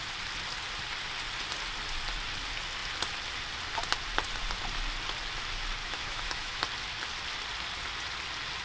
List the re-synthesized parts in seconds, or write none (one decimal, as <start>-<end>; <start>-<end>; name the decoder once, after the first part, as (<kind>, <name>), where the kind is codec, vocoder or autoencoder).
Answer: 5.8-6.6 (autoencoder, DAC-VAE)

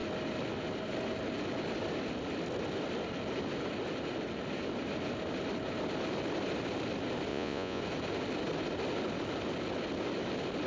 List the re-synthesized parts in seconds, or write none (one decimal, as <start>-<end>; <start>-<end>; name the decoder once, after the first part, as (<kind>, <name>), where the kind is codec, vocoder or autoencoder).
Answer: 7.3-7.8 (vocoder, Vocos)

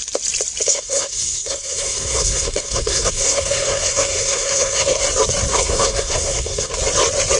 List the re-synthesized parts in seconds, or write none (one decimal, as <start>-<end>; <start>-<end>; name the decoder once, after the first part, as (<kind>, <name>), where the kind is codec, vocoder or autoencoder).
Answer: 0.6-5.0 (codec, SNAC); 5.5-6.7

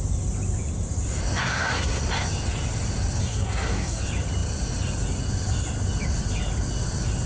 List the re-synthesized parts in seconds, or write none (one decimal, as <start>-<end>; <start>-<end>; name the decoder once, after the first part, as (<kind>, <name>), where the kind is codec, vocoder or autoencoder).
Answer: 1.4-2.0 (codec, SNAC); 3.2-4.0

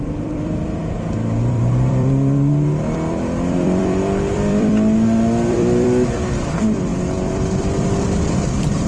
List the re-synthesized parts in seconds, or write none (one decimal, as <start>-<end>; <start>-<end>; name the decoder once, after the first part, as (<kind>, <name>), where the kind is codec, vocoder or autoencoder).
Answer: 0.0-4.7 (vocoder, BigVGAN v2); 5.5-8.9